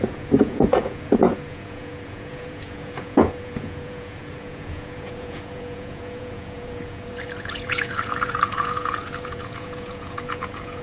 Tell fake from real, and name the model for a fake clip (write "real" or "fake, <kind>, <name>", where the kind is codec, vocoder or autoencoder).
fake, vocoder, Vocos